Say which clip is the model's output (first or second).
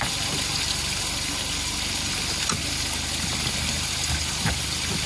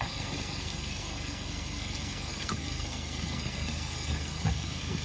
second